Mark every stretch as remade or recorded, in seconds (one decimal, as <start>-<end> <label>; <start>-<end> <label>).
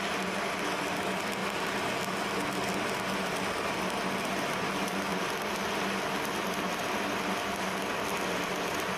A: 0.0-9.0 recorded